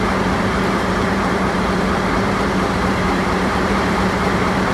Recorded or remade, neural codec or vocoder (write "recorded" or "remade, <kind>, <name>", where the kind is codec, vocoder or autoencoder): remade, vocoder, BigVGAN v2